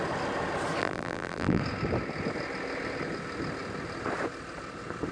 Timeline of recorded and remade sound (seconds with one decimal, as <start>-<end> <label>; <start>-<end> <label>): 0.0-0.8 recorded; 0.8-1.6 remade; 1.6-5.1 recorded